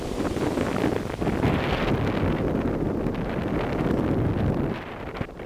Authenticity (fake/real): real